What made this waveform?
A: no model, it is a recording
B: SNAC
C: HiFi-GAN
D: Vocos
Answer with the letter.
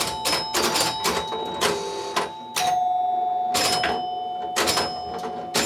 A